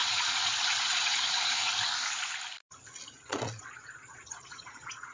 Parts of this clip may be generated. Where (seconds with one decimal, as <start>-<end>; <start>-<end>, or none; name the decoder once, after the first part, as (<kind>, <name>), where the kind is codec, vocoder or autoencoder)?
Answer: 0.0-1.7 (vocoder, Vocos); 3.1-5.1